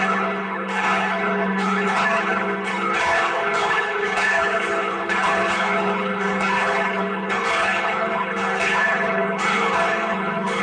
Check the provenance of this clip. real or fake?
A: fake